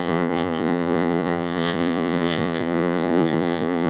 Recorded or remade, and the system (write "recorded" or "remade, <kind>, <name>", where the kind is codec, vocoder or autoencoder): remade, vocoder, Vocos